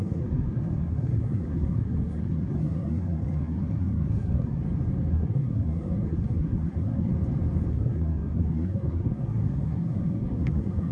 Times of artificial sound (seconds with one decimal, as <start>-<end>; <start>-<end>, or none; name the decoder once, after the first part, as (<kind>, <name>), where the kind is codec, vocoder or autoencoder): 0.0-4.6 (codec, SNAC); 5.1-7.1; 7.7-10.9

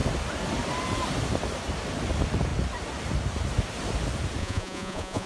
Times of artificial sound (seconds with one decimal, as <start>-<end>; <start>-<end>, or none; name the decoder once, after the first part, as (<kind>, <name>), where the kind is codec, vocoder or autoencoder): 4.4-5.3 (vocoder, Vocos)

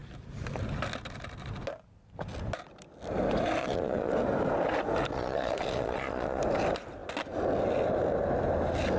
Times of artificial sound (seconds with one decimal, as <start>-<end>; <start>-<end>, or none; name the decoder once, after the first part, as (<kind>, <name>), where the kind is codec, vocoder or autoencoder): 3.6-4.1 (vocoder, Vocos); 5.1-6.4

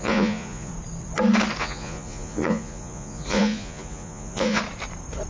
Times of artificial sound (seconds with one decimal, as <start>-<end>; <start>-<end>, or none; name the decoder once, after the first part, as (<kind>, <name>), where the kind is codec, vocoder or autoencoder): 0.0-0.7 (vocoder, Vocos); 1.6-4.6

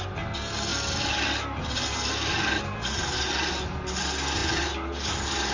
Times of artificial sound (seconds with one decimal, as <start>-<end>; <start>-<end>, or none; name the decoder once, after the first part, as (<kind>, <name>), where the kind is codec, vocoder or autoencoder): none

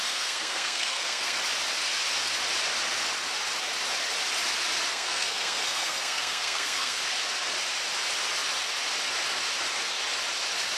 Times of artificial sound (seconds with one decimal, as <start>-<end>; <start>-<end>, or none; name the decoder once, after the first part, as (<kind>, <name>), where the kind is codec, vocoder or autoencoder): 0.0-1.4 (codec, SNAC); 4.9-7.0

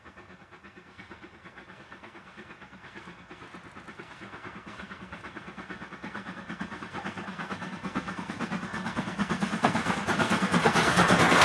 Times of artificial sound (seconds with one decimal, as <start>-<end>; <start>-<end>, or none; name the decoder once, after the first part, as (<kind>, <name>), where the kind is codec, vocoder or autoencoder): 0.0-3.4 (codec, SNAC); 3.9-11.4